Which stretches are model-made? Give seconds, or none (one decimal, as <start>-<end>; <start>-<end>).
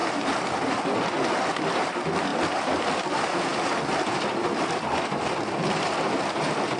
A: 0.0-1.7